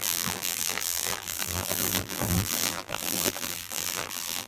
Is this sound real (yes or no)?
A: no